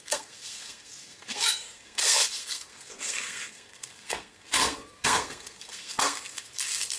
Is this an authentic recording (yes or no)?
no